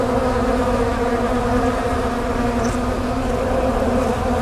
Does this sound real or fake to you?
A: real